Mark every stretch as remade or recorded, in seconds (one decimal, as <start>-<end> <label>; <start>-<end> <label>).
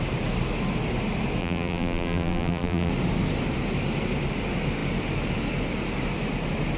0.0-1.4 recorded; 1.4-2.9 remade; 2.9-6.8 recorded